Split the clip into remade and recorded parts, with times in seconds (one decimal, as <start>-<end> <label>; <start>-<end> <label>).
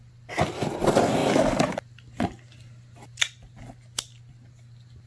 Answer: 0.0-5.1 recorded